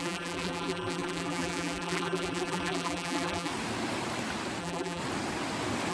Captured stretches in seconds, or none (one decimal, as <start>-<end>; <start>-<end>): 3.5-4.6; 5.0-5.9